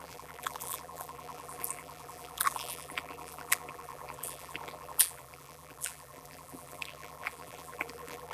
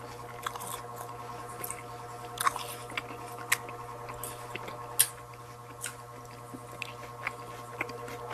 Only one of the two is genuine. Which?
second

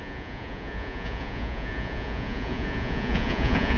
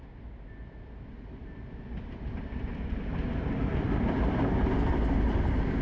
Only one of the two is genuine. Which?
second